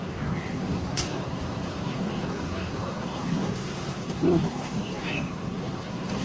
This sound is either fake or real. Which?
fake